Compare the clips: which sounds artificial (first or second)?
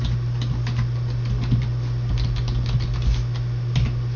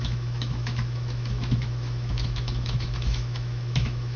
second